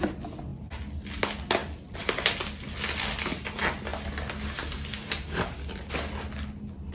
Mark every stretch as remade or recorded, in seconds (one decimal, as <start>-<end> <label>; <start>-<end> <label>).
0.0-0.5 recorded; 0.5-1.1 remade; 1.1-1.6 recorded; 1.6-2.3 remade; 2.3-6.9 recorded